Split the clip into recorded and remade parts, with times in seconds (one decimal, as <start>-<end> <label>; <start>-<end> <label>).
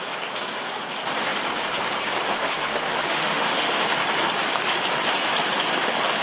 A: 0.0-2.3 recorded; 2.3-3.7 remade; 3.7-6.2 recorded